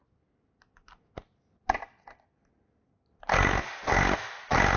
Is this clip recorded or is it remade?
recorded